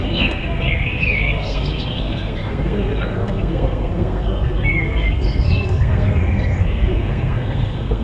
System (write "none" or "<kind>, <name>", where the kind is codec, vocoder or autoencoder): codec, SNAC